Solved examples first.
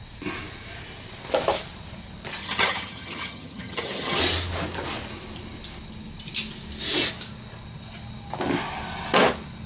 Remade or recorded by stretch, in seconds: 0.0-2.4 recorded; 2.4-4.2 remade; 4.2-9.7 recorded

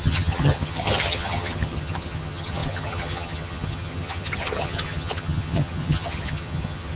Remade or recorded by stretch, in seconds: 0.0-7.0 remade

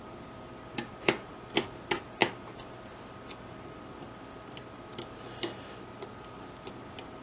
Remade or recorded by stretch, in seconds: 0.0-7.2 recorded

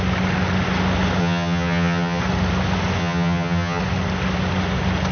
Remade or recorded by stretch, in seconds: 0.0-1.2 recorded; 1.2-2.2 remade; 2.2-3.0 recorded; 3.0-3.8 remade; 3.8-5.1 recorded

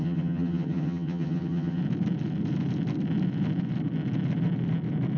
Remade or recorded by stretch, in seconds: 0.0-1.8 remade; 1.8-5.2 recorded

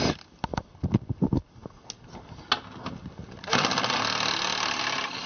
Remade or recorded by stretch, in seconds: 0.0-5.3 recorded

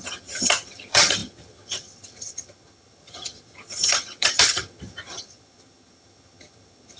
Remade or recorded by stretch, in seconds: 0.0-7.0 remade